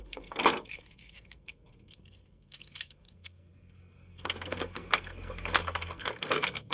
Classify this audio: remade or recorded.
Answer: remade